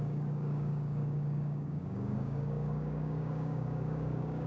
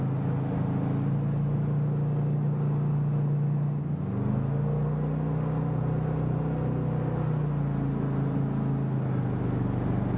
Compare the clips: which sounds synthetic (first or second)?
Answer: first